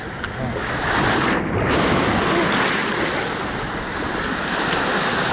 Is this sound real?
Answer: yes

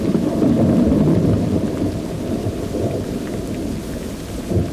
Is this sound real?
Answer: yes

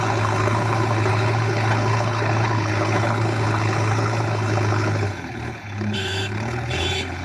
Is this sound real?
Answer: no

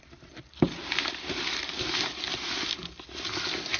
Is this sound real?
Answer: yes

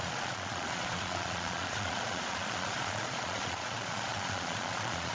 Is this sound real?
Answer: no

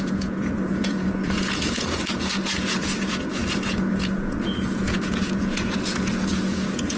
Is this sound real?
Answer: no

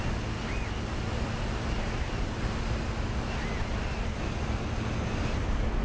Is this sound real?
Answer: yes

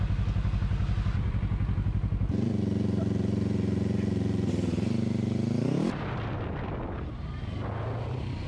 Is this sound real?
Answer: yes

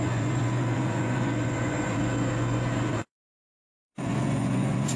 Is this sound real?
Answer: no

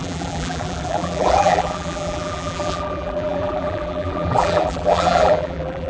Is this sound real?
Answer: no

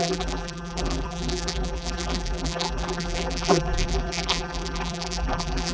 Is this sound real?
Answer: no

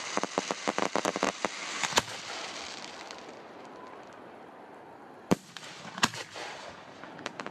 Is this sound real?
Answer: no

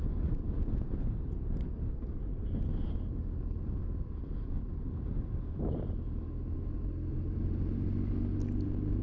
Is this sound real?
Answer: yes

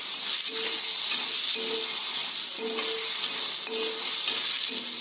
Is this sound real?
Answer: yes